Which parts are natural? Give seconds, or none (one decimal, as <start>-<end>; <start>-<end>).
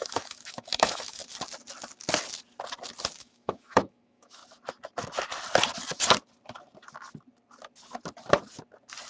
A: 1.2-3.2; 4.4-9.1